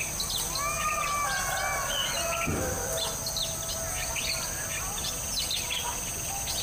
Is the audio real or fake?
real